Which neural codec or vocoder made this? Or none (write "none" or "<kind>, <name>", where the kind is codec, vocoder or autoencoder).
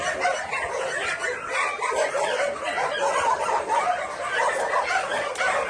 none